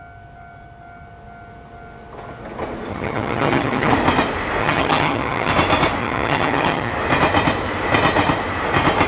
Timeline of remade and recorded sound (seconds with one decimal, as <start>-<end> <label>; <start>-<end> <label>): 0.0-2.9 recorded; 2.9-3.9 remade; 3.9-4.6 recorded; 4.6-5.5 remade; 5.5-6.0 recorded; 6.0-6.9 remade; 6.9-9.1 recorded